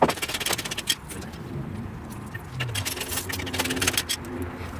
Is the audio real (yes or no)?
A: yes